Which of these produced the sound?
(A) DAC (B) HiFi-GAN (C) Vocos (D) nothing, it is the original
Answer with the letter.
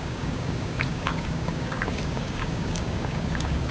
A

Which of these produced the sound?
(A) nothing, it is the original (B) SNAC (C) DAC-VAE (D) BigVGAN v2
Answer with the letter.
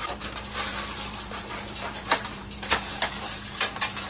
D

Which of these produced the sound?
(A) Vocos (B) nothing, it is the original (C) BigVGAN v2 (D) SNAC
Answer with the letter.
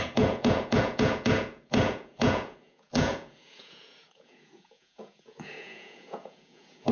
A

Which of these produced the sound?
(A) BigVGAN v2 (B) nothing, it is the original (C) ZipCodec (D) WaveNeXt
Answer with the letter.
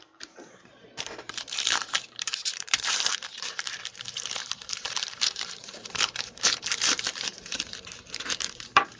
A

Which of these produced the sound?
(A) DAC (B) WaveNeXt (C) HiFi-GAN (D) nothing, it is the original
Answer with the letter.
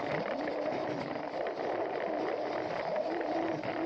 D